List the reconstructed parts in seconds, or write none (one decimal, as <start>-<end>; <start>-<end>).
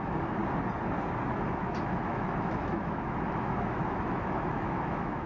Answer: 0.0-0.4; 1.3-5.3